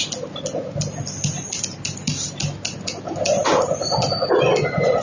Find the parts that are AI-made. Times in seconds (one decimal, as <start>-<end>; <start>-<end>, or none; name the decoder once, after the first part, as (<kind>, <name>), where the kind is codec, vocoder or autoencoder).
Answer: none